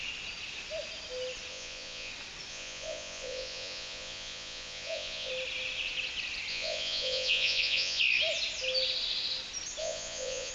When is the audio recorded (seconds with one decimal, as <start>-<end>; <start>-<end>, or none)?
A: 0.0-1.5; 2.1-2.5; 5.3-6.5; 8.0-9.8